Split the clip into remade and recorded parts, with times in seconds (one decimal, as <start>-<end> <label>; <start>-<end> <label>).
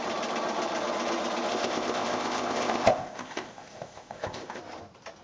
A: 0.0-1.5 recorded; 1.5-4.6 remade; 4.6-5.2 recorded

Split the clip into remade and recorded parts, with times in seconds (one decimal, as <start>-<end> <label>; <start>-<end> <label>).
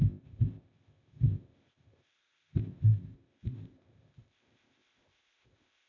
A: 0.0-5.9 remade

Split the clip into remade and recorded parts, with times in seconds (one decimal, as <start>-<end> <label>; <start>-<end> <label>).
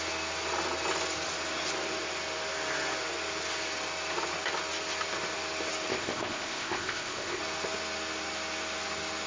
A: 0.0-5.9 recorded; 5.9-7.4 remade; 7.4-9.3 recorded